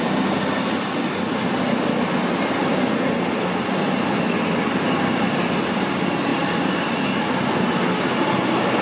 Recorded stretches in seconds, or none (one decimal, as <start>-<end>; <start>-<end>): 0.0-6.3; 7.2-8.8